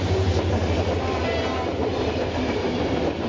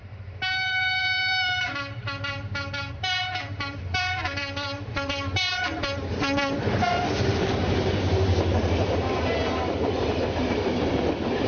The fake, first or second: second